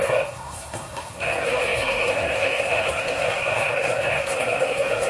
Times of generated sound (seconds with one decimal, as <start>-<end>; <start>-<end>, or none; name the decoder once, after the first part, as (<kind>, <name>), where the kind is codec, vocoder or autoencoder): 0.0-5.1 (codec, SNAC)